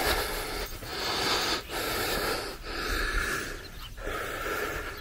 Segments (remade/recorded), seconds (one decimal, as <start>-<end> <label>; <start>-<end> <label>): 0.0-5.0 recorded